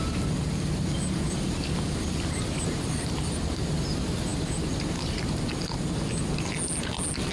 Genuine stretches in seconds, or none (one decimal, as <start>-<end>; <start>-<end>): 0.0-7.3